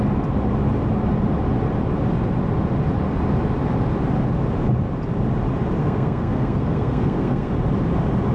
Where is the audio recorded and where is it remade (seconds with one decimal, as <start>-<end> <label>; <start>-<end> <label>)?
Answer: 0.0-5.8 recorded; 5.8-7.5 remade; 7.5-8.3 recorded